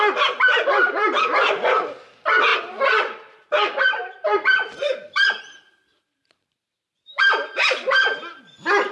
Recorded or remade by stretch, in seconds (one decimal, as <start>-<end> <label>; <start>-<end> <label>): 0.0-5.9 recorded; 5.9-8.4 remade; 8.4-8.9 recorded